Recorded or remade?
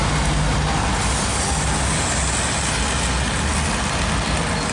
recorded